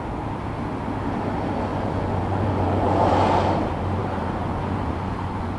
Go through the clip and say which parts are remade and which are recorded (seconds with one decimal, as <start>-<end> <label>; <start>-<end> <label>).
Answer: 0.0-1.7 recorded; 1.7-3.1 remade; 3.1-4.0 recorded; 4.0-5.6 remade